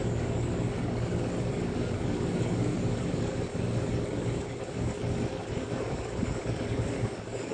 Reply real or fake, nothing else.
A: fake